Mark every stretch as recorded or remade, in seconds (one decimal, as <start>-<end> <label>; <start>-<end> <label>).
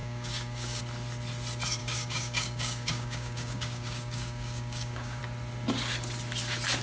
0.0-0.8 remade; 0.8-1.8 recorded; 1.8-5.2 remade; 5.2-6.8 recorded